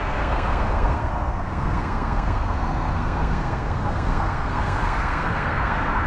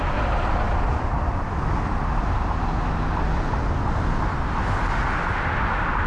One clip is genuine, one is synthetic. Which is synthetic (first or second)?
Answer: first